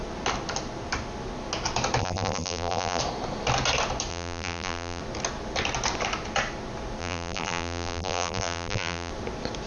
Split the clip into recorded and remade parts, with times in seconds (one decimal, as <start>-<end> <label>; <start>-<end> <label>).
0.0-2.0 recorded; 2.0-3.0 remade; 3.0-4.1 recorded; 4.1-5.0 remade; 5.0-7.0 recorded; 7.0-9.1 remade; 9.1-9.7 recorded